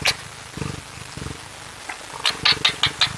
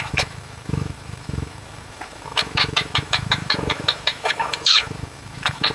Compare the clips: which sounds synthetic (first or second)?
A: second